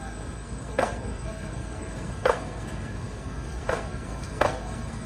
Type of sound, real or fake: fake